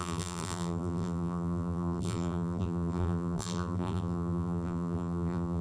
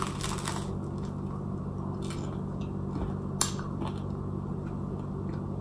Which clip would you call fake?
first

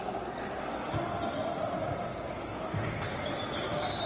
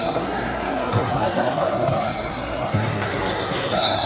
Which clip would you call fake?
second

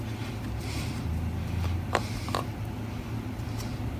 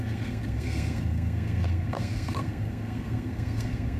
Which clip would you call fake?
second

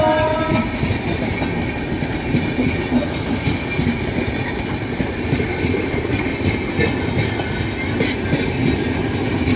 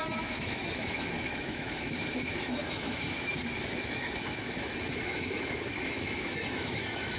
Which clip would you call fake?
second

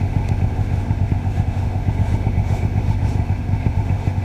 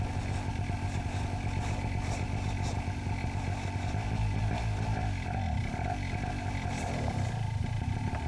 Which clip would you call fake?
first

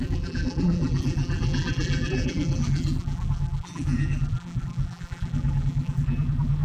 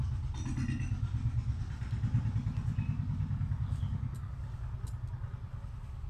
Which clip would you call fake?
first